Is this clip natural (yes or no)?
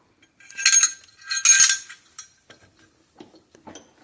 yes